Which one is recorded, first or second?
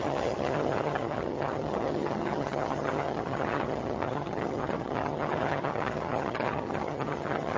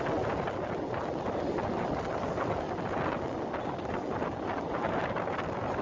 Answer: second